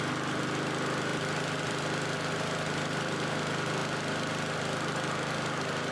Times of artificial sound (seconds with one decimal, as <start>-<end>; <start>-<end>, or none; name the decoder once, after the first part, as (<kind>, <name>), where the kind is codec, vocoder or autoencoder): 1.1-3.1 (vocoder, BigVGAN v2)